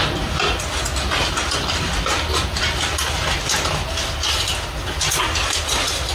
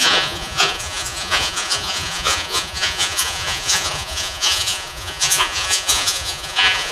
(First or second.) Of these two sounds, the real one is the first